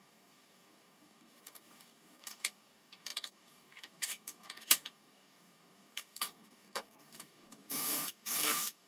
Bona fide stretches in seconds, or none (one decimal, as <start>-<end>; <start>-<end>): none